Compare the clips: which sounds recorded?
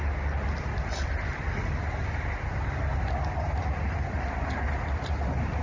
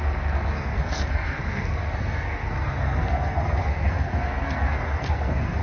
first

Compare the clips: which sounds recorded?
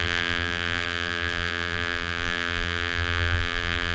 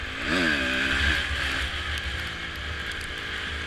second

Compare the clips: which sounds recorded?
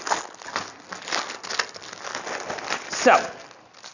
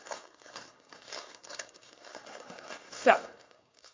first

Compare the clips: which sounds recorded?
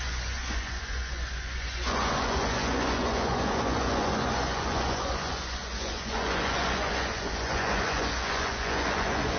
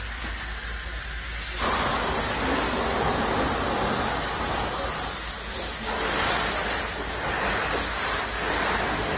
second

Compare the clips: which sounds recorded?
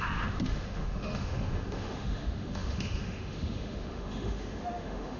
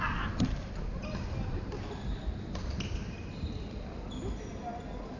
second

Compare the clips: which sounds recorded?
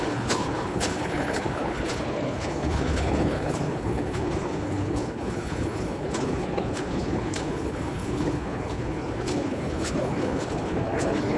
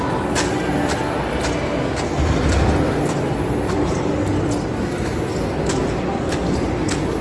second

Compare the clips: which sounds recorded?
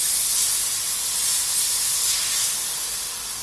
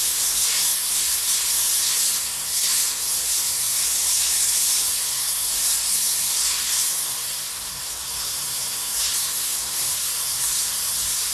first